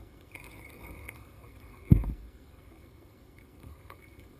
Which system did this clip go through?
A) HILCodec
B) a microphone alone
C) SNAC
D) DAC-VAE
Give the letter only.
C